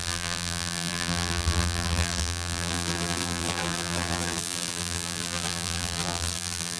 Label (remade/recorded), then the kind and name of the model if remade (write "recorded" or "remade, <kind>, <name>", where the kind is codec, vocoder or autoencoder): remade, vocoder, BigVGAN v2